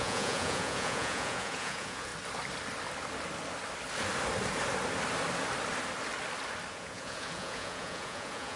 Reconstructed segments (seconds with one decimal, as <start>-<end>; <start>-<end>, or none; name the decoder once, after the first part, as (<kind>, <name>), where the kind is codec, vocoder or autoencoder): 0.0-2.1 (vocoder, Vocos); 6.7-8.6